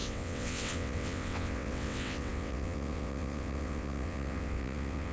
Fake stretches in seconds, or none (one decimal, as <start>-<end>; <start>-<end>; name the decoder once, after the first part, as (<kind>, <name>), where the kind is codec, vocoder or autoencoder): 0.0-5.1 (vocoder, WaveNeXt)